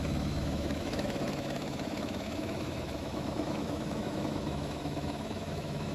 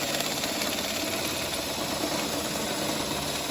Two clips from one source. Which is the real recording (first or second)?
second